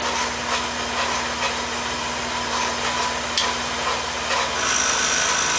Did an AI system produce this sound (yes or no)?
no